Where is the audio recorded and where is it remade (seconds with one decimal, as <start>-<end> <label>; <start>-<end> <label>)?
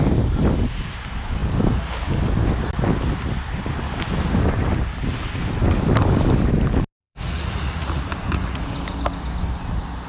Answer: 0.0-7.0 recorded; 7.0-8.6 remade; 8.6-10.1 recorded